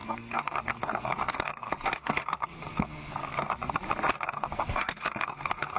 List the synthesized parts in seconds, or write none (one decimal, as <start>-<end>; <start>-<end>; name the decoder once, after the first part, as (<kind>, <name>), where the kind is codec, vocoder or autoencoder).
0.0-3.5 (codec, SNAC); 4.1-5.8